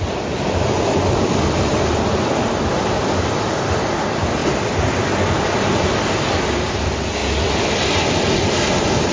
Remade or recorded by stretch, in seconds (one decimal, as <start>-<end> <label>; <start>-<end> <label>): 0.0-9.1 recorded